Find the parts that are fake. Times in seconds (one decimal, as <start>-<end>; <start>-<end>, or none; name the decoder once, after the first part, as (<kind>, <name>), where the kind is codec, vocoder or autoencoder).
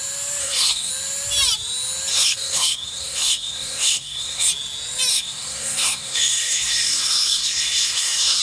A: 0.4-0.9 (codec, SNAC); 2.1-4.5; 5.1-8.4